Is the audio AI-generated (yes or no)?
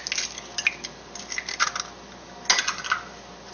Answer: no